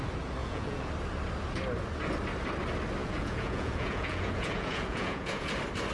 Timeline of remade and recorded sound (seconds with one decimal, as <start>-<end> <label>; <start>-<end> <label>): 0.0-0.4 recorded; 0.4-0.9 remade; 0.9-3.0 recorded; 3.0-5.5 remade; 5.5-5.9 recorded